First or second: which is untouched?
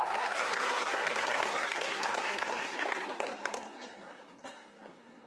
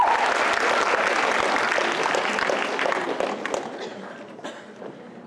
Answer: second